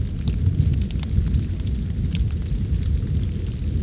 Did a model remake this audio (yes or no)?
no